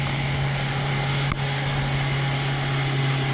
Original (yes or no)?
yes